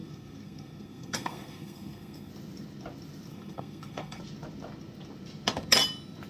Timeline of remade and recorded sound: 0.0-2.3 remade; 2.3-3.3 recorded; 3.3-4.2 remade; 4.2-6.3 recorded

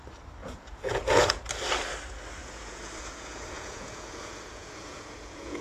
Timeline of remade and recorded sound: 0.0-0.4 recorded; 0.4-1.5 remade; 1.5-2.4 recorded; 2.4-5.6 remade

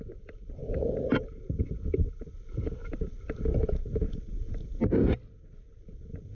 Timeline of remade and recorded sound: 0.0-6.3 recorded

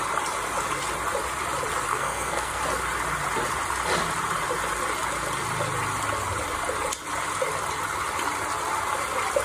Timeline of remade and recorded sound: 0.0-1.9 recorded; 1.9-2.6 remade; 2.6-9.4 recorded

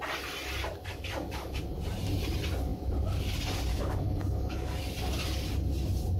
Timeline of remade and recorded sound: 0.0-0.9 recorded; 0.9-1.6 remade; 1.6-3.7 recorded; 3.7-4.8 remade; 4.8-6.2 recorded